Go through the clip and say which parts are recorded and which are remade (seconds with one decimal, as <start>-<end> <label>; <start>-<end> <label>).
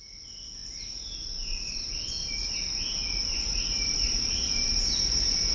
0.0-3.0 recorded; 3.0-5.5 remade